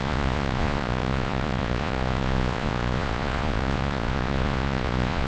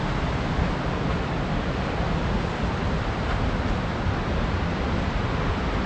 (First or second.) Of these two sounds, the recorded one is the second